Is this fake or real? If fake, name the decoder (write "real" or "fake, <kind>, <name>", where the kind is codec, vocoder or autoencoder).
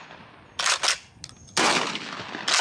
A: real